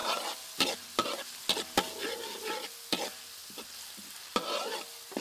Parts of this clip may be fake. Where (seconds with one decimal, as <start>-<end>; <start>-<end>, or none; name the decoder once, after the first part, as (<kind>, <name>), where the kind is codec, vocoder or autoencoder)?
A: none